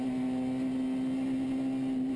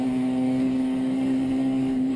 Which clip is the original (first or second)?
first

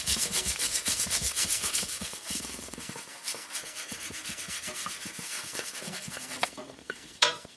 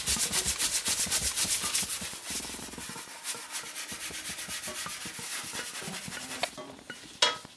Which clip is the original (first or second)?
second